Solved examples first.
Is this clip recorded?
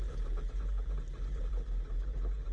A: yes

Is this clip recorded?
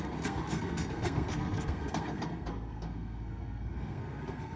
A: no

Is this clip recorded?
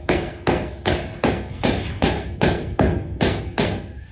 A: no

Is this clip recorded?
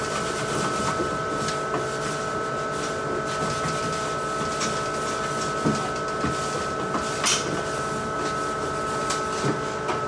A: yes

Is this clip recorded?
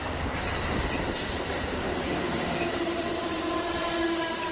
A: yes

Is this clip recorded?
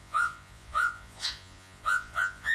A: no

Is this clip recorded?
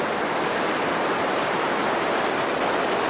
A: yes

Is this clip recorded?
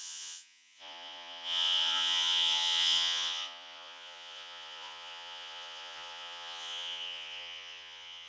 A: no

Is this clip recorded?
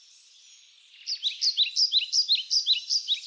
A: yes